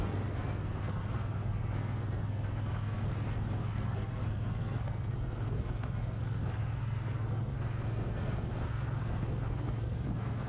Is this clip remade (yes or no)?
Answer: yes